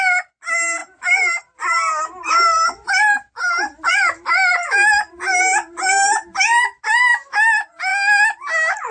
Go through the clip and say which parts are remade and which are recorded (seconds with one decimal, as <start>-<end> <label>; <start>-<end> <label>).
0.0-8.9 recorded